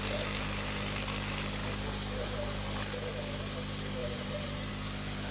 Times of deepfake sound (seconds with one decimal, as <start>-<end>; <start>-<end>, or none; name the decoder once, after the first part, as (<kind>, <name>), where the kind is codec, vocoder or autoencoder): 4.0-4.7 (vocoder, BigVGAN v2)